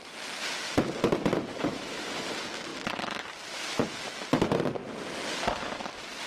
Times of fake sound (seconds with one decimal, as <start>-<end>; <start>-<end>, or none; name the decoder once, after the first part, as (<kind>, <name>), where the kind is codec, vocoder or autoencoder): 1.5-2.2 (autoencoder, DAC-VAE)